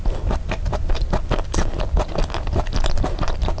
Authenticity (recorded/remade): remade